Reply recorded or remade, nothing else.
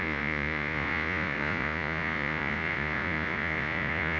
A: remade